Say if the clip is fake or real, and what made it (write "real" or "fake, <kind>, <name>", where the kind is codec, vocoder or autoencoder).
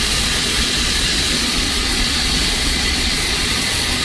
fake, vocoder, Vocos